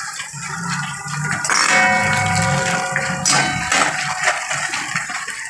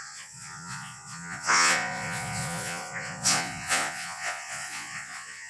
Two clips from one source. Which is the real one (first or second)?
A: first